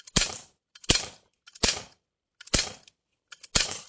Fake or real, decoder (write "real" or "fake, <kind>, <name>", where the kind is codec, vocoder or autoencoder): fake, vocoder, BigVGAN v2